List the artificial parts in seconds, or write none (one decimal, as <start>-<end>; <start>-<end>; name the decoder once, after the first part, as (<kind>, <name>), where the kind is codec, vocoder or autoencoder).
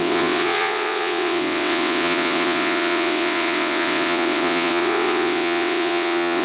0.0-6.4 (vocoder, WaveNeXt)